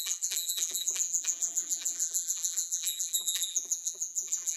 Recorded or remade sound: remade